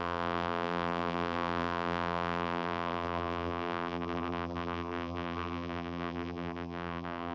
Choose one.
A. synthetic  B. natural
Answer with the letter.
A